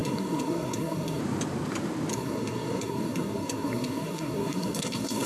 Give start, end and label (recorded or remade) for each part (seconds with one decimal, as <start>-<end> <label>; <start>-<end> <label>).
0.0-1.2 remade; 1.2-2.1 recorded; 2.1-5.3 remade